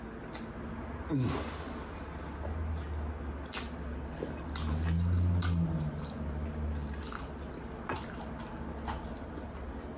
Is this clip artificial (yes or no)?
no